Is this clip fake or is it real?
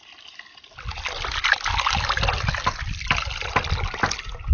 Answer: real